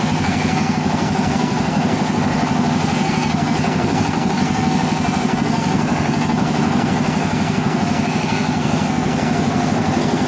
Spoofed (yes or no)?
yes